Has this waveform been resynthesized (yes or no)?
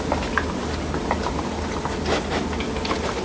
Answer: no